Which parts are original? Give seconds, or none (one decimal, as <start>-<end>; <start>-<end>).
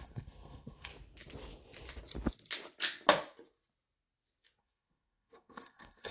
0.9-4.6